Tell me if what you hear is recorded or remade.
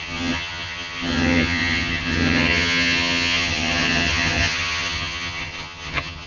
remade